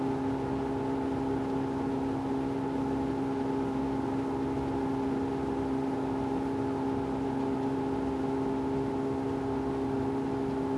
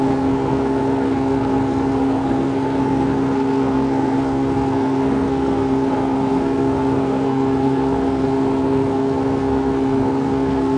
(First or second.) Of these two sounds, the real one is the first